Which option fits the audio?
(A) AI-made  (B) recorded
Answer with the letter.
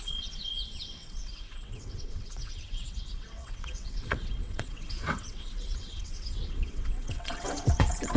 A